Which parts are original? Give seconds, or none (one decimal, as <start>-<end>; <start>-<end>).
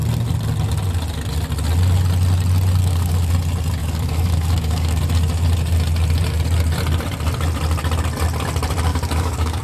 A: 0.0-2.8; 3.3-3.8; 5.0-8.9